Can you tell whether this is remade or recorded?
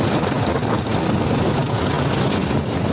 recorded